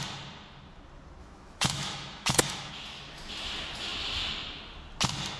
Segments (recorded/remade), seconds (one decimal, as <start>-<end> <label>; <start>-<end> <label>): 0.0-1.2 recorded; 1.2-2.7 remade; 2.7-5.4 recorded